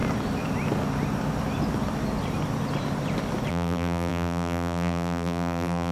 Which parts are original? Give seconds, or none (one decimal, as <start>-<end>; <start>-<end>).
0.0-3.5